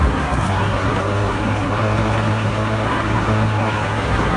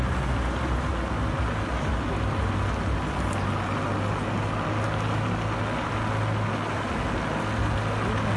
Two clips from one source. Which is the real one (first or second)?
second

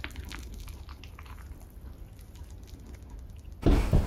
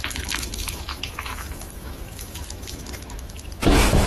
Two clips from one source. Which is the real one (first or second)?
first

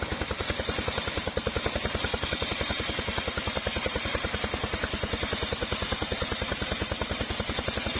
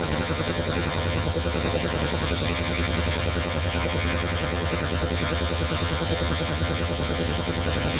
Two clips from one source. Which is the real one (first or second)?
first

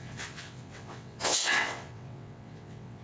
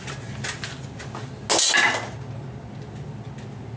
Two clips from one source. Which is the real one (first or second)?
second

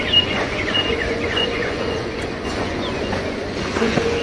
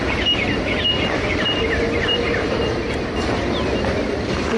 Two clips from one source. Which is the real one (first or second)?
second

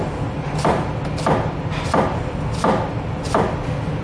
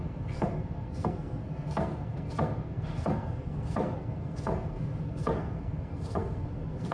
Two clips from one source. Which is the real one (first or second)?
first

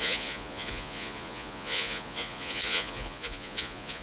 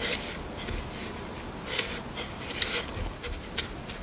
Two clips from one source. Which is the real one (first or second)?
second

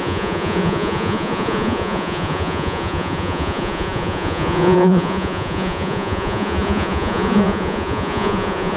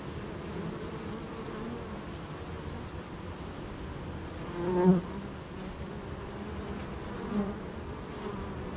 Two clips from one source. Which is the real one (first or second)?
second